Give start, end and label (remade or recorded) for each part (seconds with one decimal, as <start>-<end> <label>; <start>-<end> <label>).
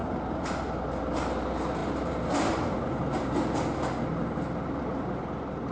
0.0-5.7 recorded